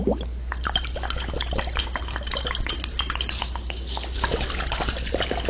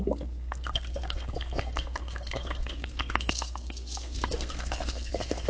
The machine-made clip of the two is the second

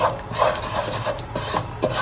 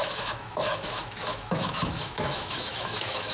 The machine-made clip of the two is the second